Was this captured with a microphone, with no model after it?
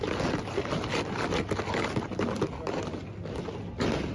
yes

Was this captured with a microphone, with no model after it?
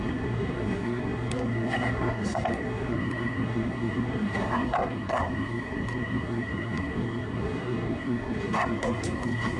no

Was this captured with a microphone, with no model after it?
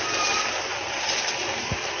yes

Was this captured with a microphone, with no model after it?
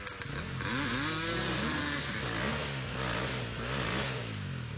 yes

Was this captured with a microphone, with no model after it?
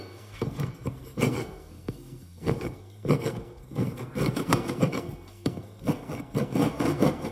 no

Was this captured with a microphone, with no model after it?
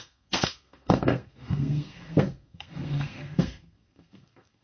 no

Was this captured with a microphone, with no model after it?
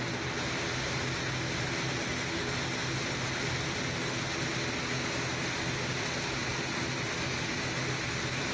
yes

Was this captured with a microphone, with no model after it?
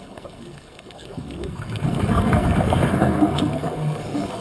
no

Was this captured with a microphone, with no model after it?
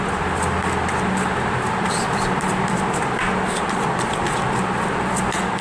yes